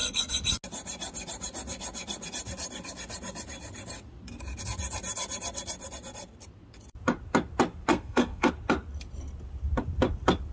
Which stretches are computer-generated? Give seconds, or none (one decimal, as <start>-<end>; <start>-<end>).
7.9-8.5

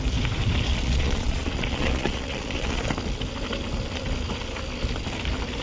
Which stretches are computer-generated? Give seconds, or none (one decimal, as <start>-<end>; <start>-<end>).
0.7-2.8